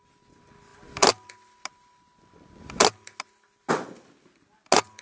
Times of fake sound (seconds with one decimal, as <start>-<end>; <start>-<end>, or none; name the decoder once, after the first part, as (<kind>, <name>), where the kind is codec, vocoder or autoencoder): none